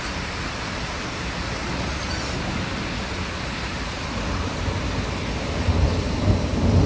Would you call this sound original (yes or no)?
yes